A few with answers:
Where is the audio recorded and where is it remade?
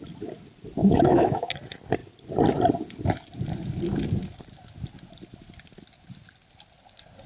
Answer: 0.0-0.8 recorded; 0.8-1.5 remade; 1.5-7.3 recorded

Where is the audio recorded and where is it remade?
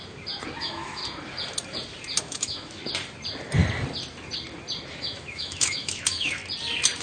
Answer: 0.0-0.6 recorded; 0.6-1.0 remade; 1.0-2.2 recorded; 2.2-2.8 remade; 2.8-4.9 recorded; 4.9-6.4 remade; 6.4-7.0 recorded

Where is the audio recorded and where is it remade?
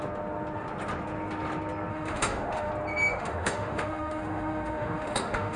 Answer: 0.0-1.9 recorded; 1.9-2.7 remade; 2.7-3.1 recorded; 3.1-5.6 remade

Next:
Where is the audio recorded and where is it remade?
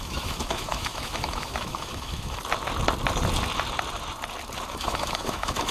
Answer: 0.0-2.4 remade; 2.4-4.7 recorded; 4.7-5.7 remade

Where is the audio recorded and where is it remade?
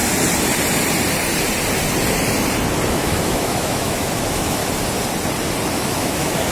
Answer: 0.0-2.9 recorded; 2.9-4.6 remade; 4.6-5.7 recorded; 5.7-6.5 remade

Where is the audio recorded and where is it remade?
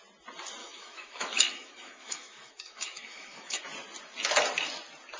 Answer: 0.0-0.6 recorded; 0.6-3.6 remade; 3.6-5.2 recorded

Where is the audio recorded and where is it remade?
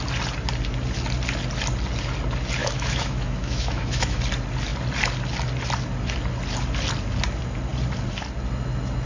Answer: 0.0-2.6 recorded; 2.6-4.2 remade; 4.2-9.1 recorded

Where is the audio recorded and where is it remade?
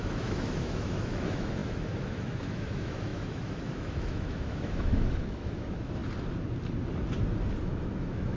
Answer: 0.0-6.0 remade; 6.0-7.6 recorded; 7.6-8.4 remade